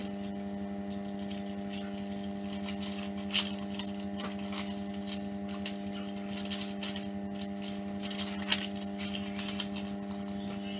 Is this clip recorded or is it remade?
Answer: recorded